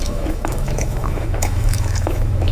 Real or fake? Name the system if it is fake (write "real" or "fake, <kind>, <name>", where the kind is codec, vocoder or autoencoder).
fake, autoencoder, DAC-VAE